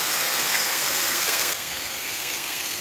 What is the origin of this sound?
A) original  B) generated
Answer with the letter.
B